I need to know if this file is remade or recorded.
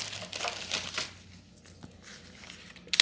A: recorded